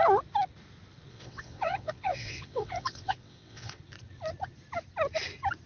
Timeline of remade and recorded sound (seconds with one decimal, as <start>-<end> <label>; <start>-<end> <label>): 0.0-1.1 recorded; 1.1-3.8 remade; 3.8-5.7 recorded